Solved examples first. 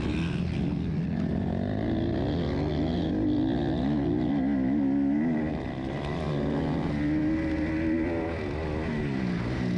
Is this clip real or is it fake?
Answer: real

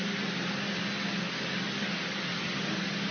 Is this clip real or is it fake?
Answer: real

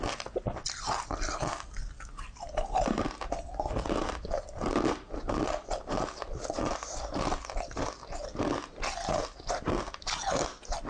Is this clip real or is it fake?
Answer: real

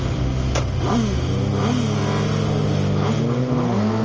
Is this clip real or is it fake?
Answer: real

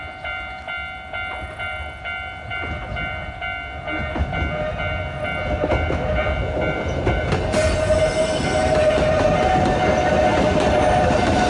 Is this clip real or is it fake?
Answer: real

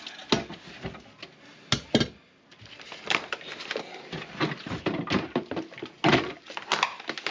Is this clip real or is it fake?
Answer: real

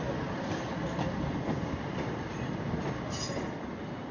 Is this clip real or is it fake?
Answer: real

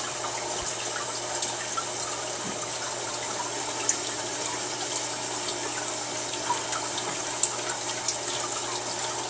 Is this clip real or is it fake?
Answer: real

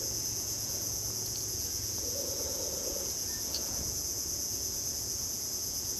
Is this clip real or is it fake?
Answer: fake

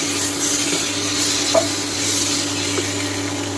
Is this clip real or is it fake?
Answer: real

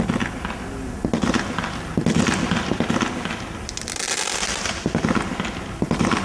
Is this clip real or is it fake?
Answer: real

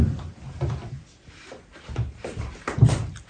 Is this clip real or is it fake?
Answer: real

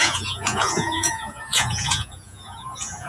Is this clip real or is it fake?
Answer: fake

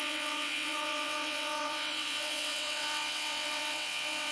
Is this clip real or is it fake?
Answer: fake